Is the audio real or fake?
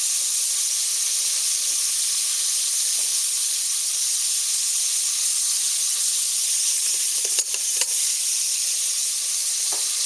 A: real